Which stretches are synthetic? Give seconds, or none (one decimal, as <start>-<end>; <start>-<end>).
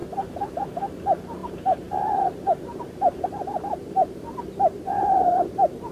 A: 0.6-5.9